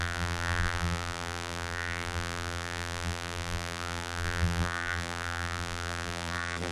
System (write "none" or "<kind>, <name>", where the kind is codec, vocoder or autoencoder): vocoder, BigVGAN v2